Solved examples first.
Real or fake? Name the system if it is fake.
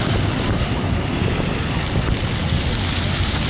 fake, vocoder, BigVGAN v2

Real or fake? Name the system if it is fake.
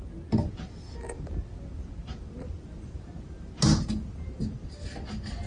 real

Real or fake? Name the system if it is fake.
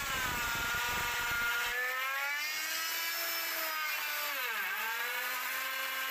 real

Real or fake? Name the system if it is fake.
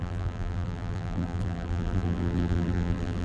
fake, vocoder, BigVGAN v2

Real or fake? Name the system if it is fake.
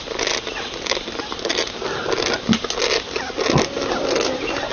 real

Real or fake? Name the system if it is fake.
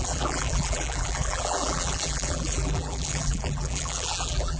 fake, vocoder, BigVGAN v2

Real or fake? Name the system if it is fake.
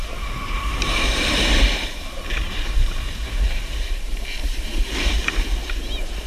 fake, vocoder, BigVGAN v2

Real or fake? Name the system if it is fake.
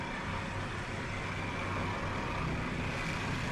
real